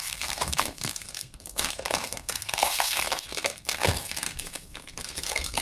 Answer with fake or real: fake